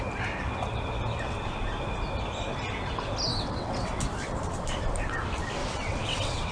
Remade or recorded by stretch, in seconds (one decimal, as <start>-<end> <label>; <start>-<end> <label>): 0.0-3.3 recorded; 3.3-4.0 remade; 4.0-5.6 recorded; 5.6-6.5 remade